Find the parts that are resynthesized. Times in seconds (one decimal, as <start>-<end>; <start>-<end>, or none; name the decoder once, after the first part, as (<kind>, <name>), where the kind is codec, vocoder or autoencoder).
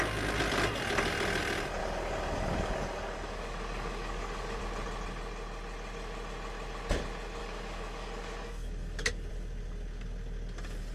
1.8-4.6 (codec, DAC); 7.4-9.3